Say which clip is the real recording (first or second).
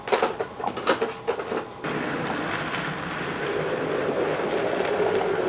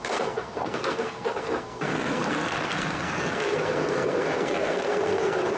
first